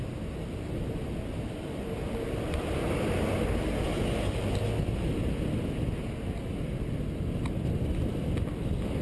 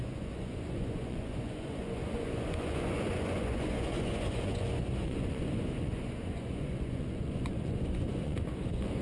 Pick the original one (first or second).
first